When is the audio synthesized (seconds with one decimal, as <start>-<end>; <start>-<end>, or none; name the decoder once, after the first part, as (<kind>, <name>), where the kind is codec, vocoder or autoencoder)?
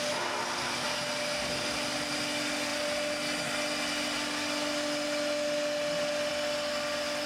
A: none